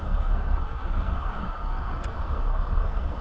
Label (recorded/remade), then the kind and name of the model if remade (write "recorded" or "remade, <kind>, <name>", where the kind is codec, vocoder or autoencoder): remade, codec, SNAC